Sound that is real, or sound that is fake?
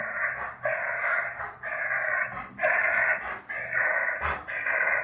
real